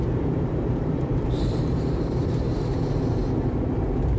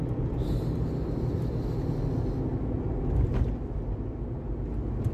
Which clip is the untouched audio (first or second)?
second